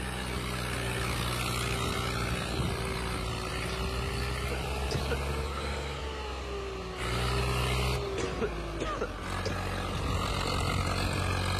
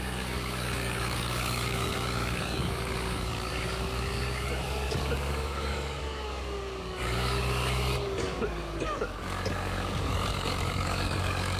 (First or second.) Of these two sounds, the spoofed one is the second